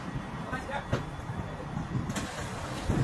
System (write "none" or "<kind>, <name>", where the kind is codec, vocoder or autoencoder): none